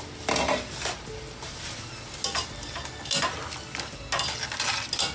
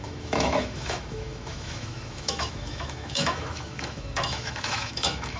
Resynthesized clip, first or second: second